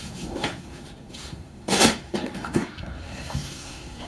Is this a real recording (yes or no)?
no